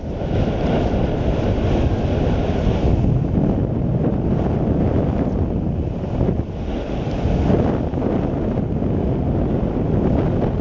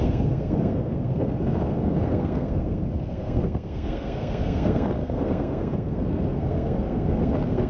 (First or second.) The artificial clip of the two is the second